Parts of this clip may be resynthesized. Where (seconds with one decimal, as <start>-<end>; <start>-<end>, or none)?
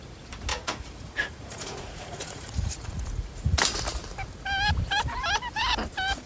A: 0.5-3.6